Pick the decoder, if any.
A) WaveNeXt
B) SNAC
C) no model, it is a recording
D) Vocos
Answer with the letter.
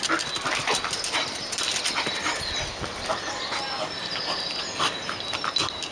C